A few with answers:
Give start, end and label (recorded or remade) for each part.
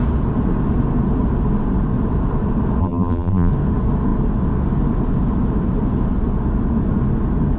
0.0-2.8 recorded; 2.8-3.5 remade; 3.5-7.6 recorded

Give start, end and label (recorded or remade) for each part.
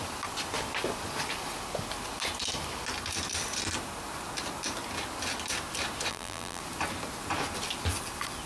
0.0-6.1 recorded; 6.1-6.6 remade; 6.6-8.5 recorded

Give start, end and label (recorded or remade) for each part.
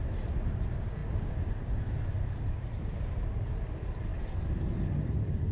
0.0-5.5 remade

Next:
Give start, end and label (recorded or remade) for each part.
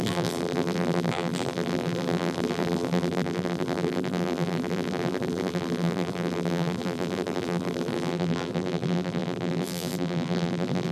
0.0-10.9 remade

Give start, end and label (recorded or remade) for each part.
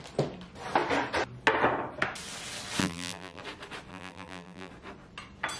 0.0-2.8 recorded; 2.8-3.4 remade; 3.4-3.9 recorded; 3.9-4.7 remade; 4.7-5.6 recorded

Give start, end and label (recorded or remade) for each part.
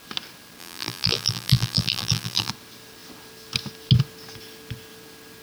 0.0-0.6 recorded; 0.6-2.5 remade; 2.5-5.4 recorded